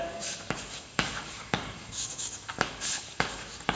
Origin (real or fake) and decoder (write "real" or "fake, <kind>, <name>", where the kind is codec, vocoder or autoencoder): fake, codec, DAC